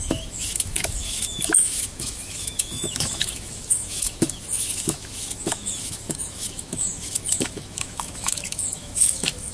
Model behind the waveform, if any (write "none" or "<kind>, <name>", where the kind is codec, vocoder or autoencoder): autoencoder, DAC-VAE